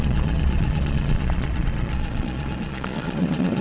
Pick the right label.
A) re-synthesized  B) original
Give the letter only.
A